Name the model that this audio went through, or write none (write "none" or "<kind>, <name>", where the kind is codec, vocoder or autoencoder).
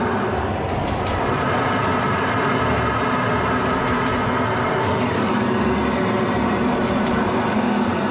none